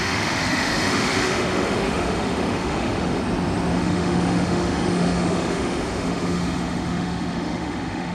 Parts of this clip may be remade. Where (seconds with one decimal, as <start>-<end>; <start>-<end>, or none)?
0.0-3.2; 3.7-8.1